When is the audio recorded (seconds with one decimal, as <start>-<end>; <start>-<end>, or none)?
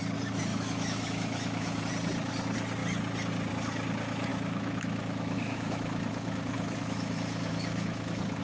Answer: 0.0-0.5; 1.8-4.3